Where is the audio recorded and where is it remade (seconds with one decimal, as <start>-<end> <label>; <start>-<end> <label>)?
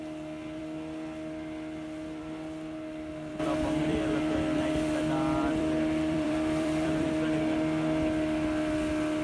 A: 0.0-3.3 recorded; 3.3-7.1 remade; 7.1-9.2 recorded